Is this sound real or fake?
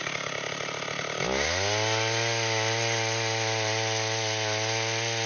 real